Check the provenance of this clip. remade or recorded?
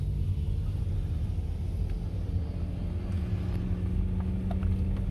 recorded